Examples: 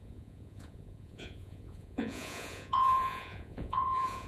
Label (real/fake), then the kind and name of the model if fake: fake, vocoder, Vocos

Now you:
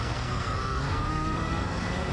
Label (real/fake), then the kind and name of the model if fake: fake, codec, SNAC